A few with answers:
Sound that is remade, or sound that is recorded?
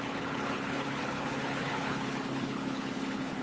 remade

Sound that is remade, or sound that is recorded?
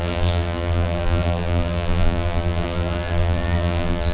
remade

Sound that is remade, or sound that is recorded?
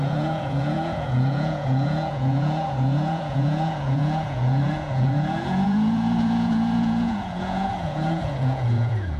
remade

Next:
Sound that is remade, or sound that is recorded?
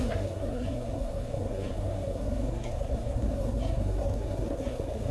remade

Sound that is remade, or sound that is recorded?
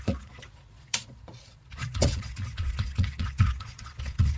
remade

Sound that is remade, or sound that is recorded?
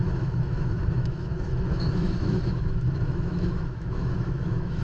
remade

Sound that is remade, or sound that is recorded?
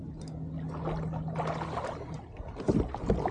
recorded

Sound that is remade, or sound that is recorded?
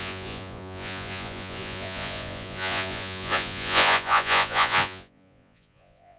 remade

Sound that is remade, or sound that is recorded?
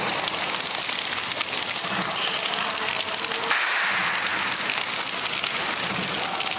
recorded